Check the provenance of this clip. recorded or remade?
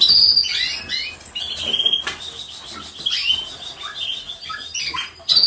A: recorded